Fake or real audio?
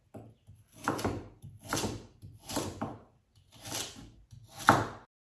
real